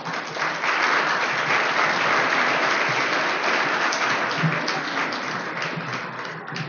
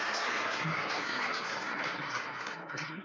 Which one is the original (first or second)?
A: first